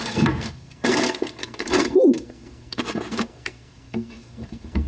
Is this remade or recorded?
remade